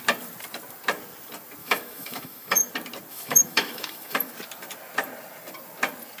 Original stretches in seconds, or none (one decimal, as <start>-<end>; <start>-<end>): 0.0-1.6; 2.7-3.1; 4.3-6.2